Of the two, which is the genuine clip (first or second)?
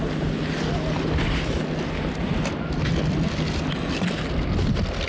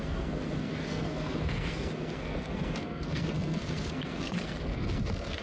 first